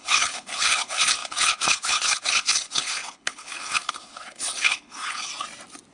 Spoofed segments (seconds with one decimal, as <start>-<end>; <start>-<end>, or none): 0.0-5.3